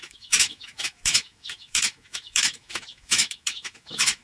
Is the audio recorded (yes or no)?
no